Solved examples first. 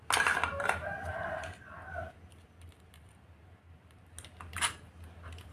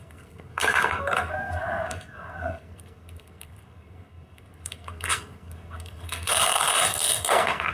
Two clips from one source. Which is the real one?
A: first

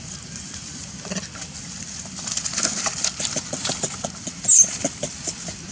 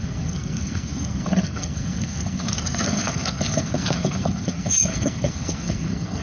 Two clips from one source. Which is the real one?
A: first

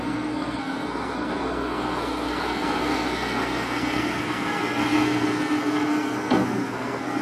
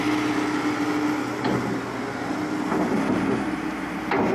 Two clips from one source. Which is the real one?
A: second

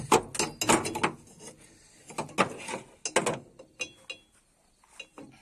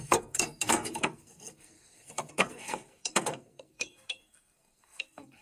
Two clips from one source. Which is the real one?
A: first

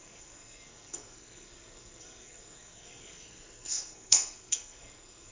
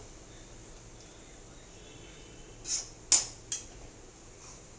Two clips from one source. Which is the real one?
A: second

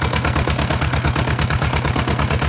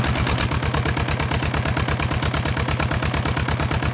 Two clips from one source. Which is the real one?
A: second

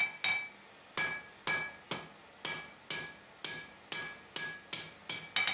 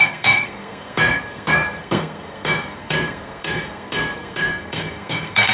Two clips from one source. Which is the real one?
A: first